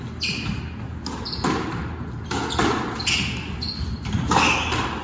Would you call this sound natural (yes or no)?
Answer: yes